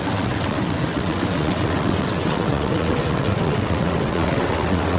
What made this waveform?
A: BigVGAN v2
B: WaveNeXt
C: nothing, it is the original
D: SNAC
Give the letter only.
B